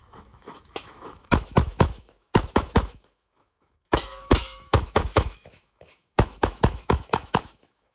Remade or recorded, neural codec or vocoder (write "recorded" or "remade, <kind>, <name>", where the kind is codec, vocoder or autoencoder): remade, autoencoder, DAC-VAE